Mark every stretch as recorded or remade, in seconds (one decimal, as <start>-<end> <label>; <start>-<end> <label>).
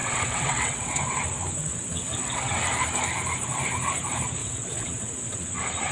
0.0-1.0 remade; 1.0-1.6 recorded; 1.6-2.6 remade; 2.6-4.4 recorded; 4.4-5.5 remade; 5.5-5.9 recorded